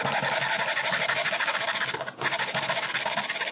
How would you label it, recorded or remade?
recorded